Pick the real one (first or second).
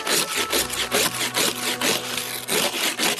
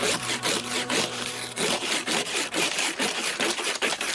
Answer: first